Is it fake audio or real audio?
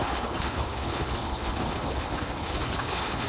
fake